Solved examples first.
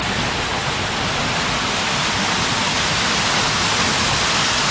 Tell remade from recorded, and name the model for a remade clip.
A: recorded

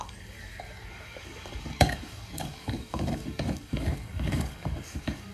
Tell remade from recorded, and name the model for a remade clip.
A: remade, codec, DAC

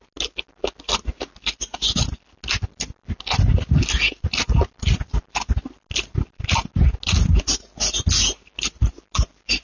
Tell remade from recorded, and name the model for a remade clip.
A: recorded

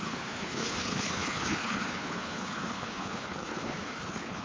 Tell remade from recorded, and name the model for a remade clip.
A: remade, codec, HILCodec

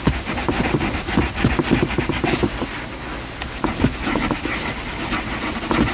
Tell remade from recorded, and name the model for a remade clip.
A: recorded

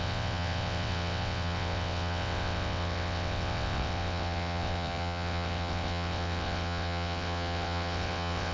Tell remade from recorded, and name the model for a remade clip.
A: remade, vocoder, WaveNeXt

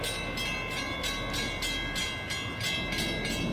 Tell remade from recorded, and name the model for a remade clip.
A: recorded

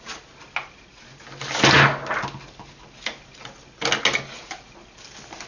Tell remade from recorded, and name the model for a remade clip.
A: recorded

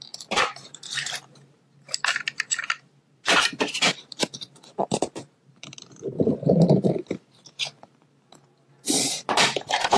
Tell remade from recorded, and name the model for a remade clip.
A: remade, vocoder, BigVGAN v2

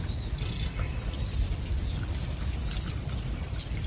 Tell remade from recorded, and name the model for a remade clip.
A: recorded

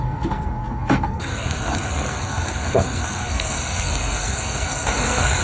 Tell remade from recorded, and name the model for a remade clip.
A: remade, codec, SNAC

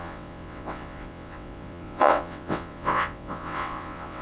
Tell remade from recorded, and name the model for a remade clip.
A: remade, vocoder, WaveNeXt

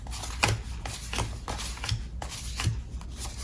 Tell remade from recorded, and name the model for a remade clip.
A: recorded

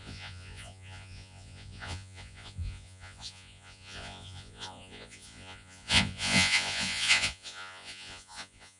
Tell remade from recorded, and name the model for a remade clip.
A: remade, vocoder, Vocos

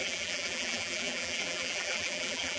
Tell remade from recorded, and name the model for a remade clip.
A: remade, vocoder, BigVGAN v2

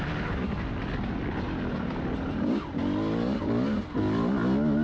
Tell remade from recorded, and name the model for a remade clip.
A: recorded